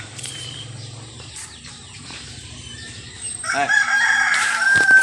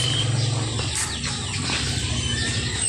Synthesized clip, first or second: first